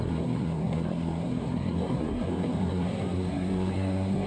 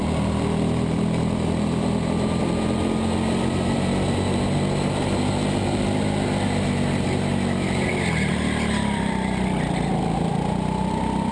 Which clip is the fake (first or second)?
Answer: first